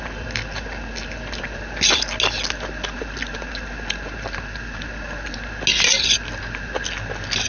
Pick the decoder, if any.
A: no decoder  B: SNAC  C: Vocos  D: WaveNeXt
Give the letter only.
A